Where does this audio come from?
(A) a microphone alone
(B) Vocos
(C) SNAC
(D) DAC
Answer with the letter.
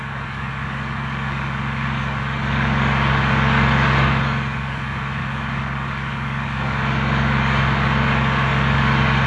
D